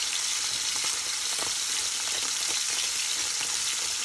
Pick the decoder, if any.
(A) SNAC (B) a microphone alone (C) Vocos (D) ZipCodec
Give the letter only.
B